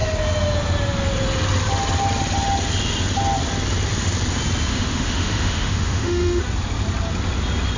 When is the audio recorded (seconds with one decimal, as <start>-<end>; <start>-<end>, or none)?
0.0-4.7; 6.4-7.8